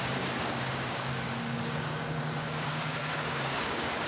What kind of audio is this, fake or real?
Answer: fake